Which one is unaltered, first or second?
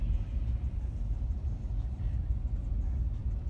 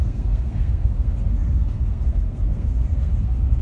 first